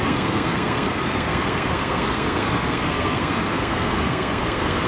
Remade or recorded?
remade